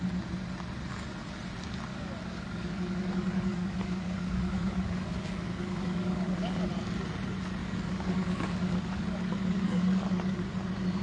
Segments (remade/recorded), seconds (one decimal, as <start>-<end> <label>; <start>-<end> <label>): 0.0-1.9 recorded; 1.9-6.7 remade; 6.7-7.6 recorded; 7.6-10.4 remade; 10.4-11.0 recorded